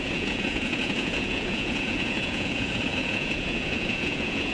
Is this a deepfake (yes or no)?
yes